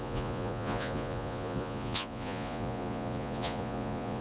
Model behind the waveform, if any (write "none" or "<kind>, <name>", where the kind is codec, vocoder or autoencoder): vocoder, Vocos